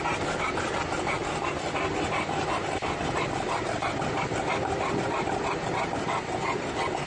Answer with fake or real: real